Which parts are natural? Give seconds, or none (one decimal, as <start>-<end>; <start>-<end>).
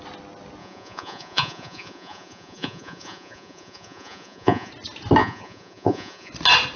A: 0.0-0.6; 4.7-5.2; 6.3-6.8